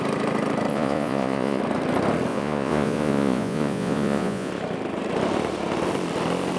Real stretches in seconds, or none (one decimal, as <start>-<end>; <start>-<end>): 0.0-0.7; 1.6-2.3; 4.5-6.6